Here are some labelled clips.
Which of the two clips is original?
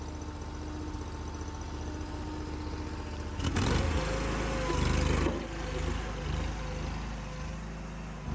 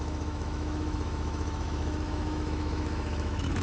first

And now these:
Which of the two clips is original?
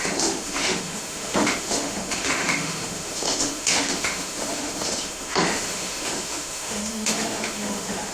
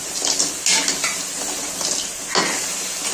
second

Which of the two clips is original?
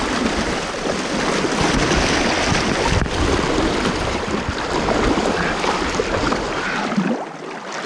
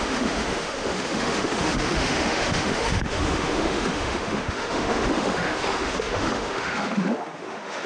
first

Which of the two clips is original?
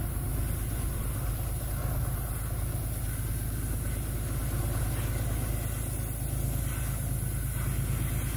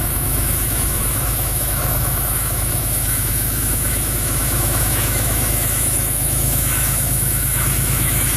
first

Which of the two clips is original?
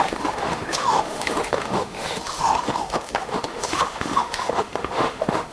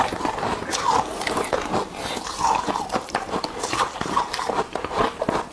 second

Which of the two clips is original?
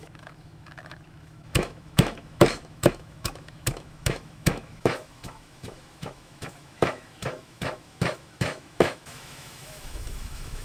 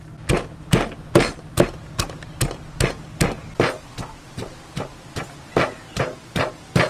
second